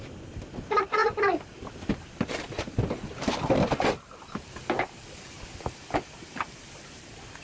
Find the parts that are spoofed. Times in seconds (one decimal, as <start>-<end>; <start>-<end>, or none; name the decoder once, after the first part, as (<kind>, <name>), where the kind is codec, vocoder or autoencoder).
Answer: none